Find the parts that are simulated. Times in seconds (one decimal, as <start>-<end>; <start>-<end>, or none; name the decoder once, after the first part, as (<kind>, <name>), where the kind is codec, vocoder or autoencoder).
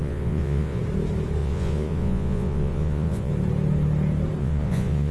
0.0-0.8 (vocoder, Vocos); 1.4-3.3; 4.4-5.1